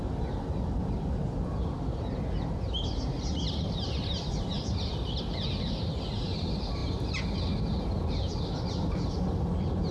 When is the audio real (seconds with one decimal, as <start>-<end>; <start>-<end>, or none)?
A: 0.0-9.9